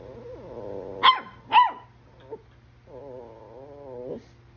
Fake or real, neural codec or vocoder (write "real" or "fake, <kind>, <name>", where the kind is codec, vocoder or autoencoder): real